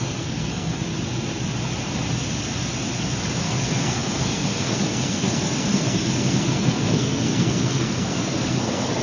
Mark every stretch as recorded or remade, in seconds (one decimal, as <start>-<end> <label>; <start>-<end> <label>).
0.0-0.9 remade; 0.9-3.4 recorded; 3.4-9.0 remade